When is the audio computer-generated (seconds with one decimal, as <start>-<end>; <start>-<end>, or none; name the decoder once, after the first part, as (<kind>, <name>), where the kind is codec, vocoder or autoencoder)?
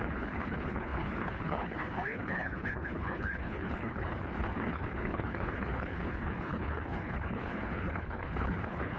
0.0-9.0 (codec, HILCodec)